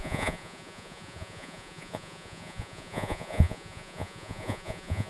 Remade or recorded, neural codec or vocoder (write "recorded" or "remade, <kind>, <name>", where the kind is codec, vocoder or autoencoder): remade, vocoder, Vocos